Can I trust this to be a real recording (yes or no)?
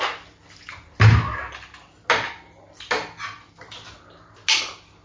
yes